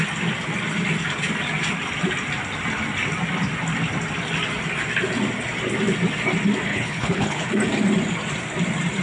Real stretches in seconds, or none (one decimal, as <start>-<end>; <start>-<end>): 0.0-6.7; 7.5-9.0